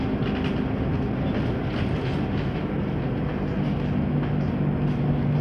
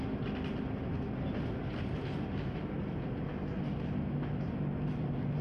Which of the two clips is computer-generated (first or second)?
second